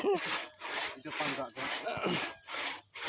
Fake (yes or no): no